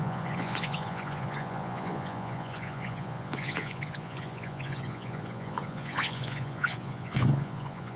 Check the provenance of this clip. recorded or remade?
remade